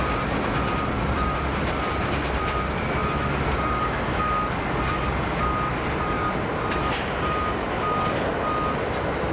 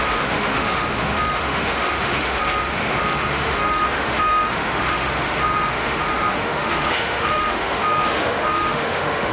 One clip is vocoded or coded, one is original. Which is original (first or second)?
first